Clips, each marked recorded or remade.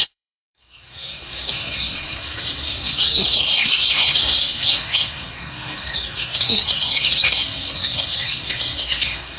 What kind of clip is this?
remade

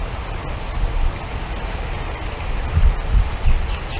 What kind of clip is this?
recorded